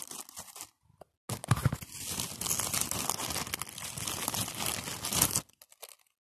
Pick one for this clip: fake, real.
real